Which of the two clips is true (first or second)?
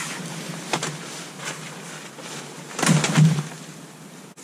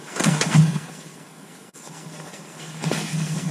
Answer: first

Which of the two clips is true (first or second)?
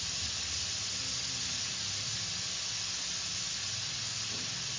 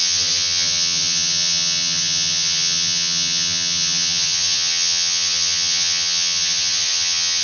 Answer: first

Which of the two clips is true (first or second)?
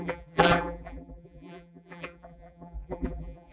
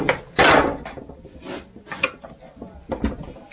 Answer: second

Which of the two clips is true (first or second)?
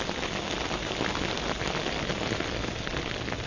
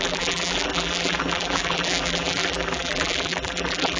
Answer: first